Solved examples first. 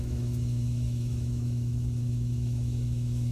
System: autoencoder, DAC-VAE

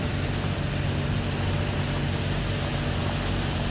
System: none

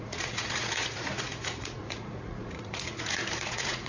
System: vocoder, Vocos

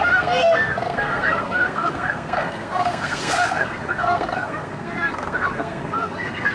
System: codec, SNAC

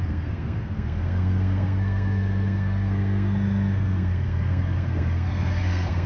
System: codec, SNAC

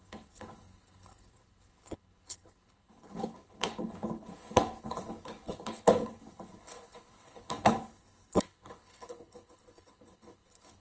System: codec, HILCodec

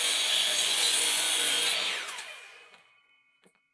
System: vocoder, Vocos